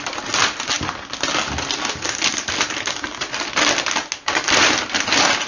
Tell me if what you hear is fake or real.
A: real